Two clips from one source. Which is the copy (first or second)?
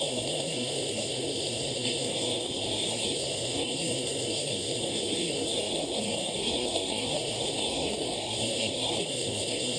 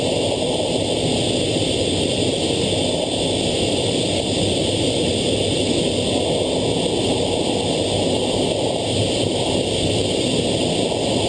first